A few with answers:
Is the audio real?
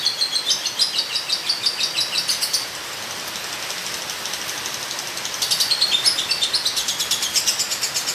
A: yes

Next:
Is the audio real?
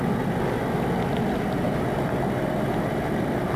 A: yes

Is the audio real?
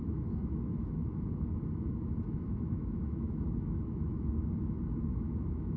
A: no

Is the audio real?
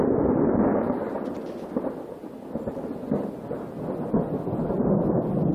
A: yes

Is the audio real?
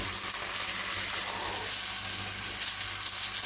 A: yes